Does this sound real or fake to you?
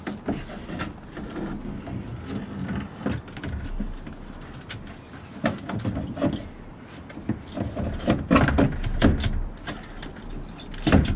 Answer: real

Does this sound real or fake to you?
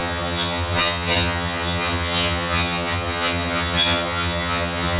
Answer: fake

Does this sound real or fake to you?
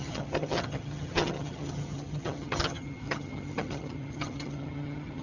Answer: fake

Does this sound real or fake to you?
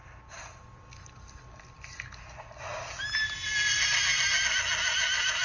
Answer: real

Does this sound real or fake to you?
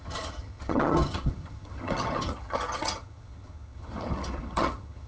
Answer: fake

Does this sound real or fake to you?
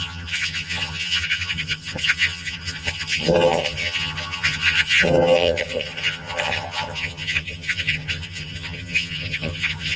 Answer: fake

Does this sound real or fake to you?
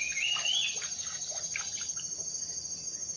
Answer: real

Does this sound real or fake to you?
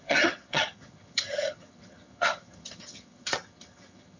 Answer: fake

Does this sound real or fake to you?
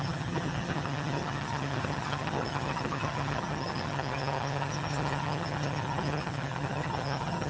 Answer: fake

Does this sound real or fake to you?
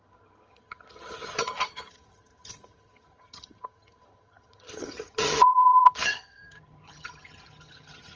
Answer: fake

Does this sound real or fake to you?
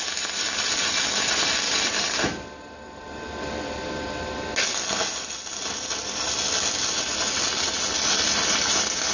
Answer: real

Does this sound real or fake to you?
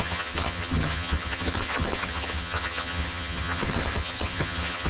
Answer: fake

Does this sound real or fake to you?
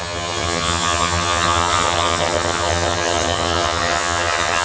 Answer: fake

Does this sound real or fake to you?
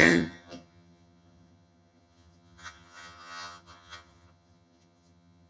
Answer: fake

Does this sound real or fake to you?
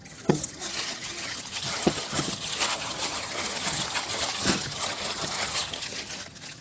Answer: fake